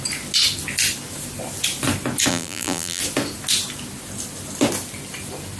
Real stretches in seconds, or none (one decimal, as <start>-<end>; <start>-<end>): 0.0-2.3; 3.0-5.6